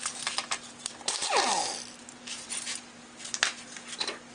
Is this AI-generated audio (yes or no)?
no